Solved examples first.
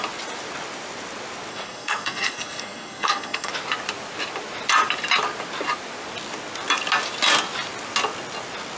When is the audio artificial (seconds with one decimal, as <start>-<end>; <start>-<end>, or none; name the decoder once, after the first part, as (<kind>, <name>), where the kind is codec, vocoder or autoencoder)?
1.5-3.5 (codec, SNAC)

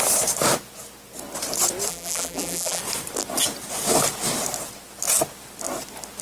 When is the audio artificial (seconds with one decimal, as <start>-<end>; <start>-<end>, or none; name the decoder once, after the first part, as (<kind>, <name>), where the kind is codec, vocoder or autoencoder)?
1.9-2.8 (vocoder, BigVGAN v2)

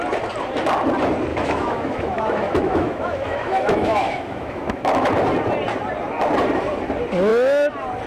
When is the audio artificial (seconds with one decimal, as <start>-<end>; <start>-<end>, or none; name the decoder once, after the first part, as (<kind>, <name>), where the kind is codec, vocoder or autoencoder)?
1.3-5.1 (autoencoder, DAC-VAE)

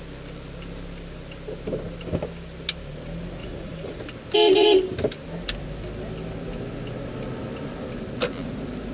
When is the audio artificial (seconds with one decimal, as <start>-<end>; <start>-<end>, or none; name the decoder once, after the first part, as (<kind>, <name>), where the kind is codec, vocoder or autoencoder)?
3.4-4.0 (vocoder, Vocos)

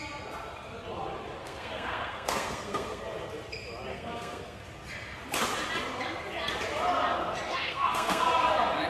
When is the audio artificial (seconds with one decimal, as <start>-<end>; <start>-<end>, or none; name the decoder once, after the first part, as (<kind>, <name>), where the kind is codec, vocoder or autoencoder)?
1.4-3.0 (codec, SNAC); 3.9-4.6; 7.5-8.3

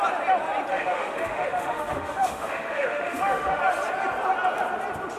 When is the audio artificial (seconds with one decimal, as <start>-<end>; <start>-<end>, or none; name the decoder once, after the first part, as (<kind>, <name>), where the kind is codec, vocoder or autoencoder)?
0.7-3.6 (autoencoder, DAC-VAE)